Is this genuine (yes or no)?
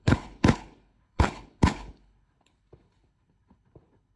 no